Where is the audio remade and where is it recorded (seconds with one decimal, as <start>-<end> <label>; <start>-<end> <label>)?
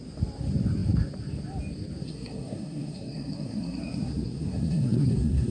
0.0-2.0 recorded; 2.0-5.5 remade